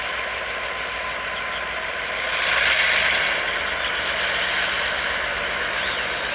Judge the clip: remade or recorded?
recorded